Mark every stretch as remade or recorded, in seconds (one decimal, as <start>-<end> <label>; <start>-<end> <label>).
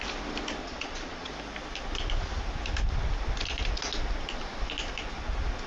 0.0-0.6 recorded; 0.6-1.3 remade; 1.3-5.7 recorded